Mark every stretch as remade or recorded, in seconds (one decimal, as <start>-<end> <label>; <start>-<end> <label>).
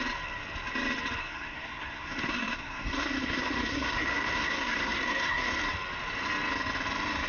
0.0-1.2 recorded; 1.2-5.5 remade; 5.5-7.3 recorded